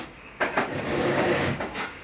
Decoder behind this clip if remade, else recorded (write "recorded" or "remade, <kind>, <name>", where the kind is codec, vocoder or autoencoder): remade, codec, DAC